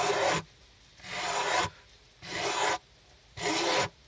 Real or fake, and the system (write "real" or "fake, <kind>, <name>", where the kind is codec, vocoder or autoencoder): real